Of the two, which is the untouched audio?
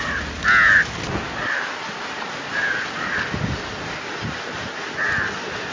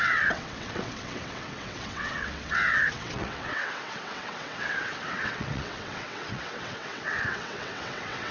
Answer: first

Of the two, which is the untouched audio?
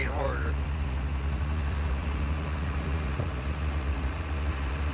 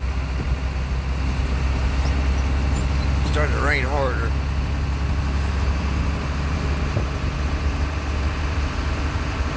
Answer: second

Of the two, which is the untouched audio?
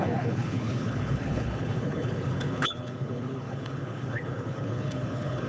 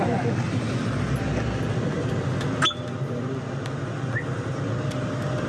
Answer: second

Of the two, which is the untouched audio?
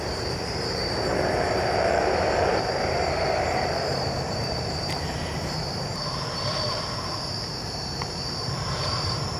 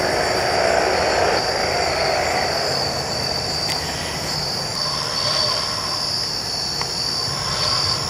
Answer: second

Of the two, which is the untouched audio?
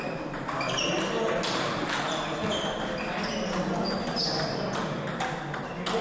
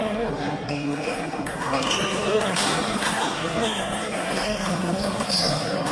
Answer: first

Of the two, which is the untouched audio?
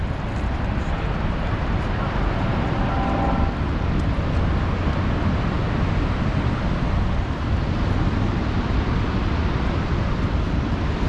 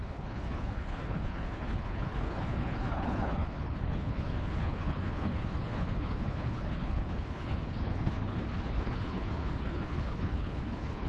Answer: first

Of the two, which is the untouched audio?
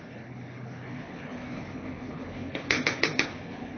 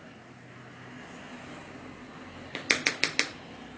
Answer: second